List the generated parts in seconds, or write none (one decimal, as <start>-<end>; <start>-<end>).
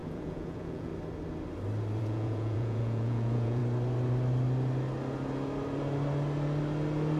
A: 0.0-0.9; 2.0-3.6